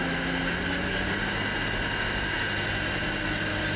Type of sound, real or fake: real